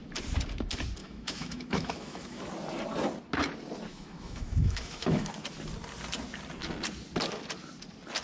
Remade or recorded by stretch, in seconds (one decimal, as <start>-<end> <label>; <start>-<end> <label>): 0.0-1.0 recorded; 1.0-2.4 remade; 2.4-3.9 recorded; 3.9-5.3 remade; 5.3-8.2 recorded